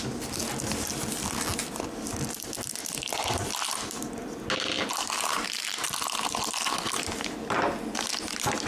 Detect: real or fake real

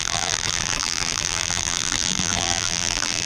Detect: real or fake fake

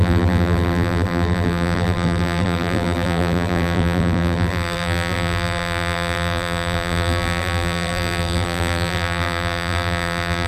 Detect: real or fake fake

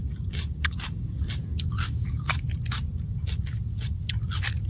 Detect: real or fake real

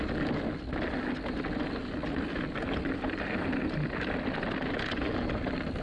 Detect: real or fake real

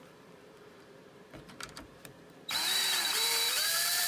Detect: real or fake fake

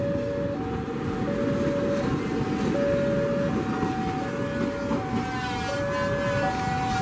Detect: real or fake real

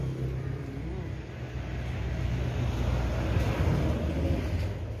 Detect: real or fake real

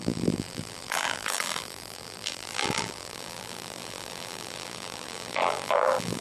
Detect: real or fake fake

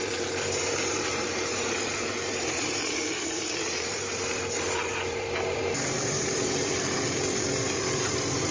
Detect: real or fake fake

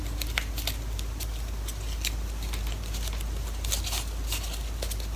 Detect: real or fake real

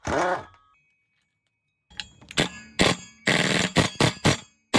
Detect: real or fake real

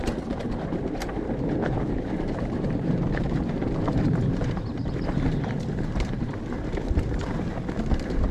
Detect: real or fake fake